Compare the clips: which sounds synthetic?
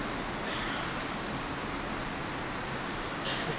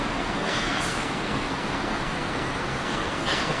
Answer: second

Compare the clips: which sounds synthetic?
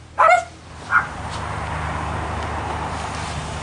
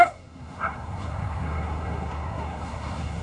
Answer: second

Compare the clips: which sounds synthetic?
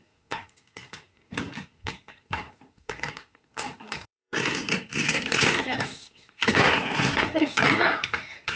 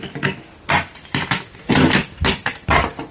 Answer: first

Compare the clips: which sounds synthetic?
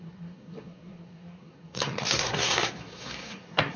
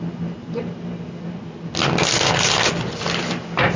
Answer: first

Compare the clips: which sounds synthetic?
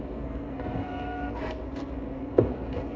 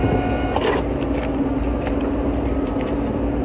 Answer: first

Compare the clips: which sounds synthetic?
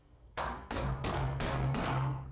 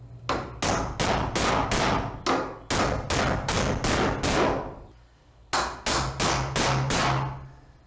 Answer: first